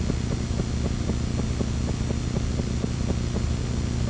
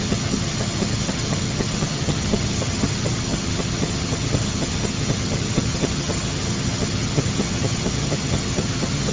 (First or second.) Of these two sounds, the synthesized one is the second